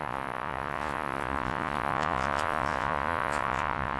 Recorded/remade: remade